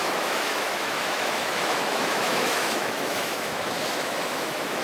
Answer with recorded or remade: remade